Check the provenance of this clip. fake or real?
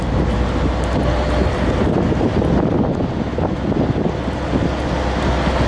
real